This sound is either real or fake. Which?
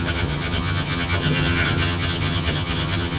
fake